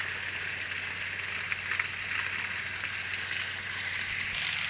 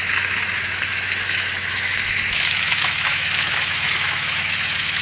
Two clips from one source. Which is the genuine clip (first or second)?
first